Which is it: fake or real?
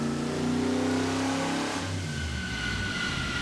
real